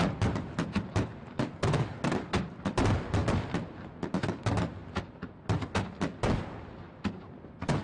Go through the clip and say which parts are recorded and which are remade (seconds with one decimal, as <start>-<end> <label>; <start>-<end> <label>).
0.0-7.8 recorded